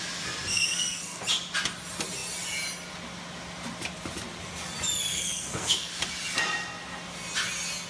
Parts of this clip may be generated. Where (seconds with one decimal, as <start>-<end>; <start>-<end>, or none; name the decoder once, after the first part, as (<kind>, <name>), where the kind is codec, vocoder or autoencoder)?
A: 0.5-1.2 (codec, SNAC); 5.1-5.9